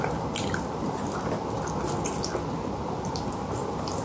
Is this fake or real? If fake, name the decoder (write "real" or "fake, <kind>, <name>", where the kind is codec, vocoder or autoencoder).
real